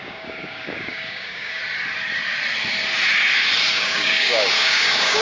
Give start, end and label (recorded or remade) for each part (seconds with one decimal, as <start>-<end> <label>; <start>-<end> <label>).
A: 0.0-1.6 remade; 1.6-3.7 recorded; 3.7-5.2 remade

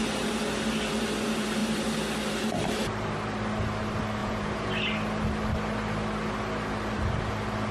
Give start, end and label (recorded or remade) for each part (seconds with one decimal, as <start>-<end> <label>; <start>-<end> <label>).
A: 0.0-4.2 recorded; 4.2-4.7 remade; 4.7-7.7 recorded